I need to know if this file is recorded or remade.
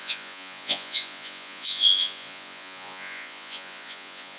remade